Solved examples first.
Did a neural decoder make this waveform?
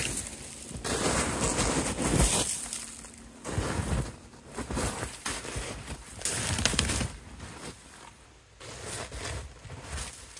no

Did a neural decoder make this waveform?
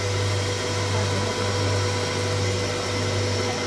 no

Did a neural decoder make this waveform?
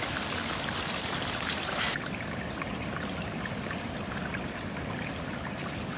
no